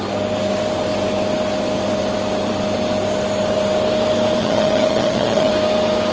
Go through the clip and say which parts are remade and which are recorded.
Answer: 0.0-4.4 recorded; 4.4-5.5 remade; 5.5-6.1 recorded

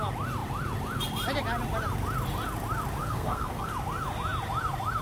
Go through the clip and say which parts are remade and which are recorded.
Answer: 0.0-3.0 recorded; 3.0-3.7 remade; 3.7-5.0 recorded

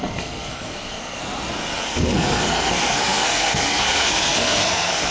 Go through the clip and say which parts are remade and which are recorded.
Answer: 0.0-1.2 remade; 1.2-1.8 recorded; 1.8-5.1 remade